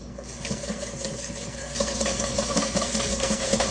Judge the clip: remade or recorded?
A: remade